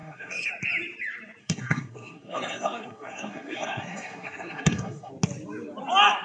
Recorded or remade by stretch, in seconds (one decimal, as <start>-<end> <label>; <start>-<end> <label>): 0.0-0.5 remade; 0.5-1.4 recorded; 1.4-5.1 remade; 5.1-6.2 recorded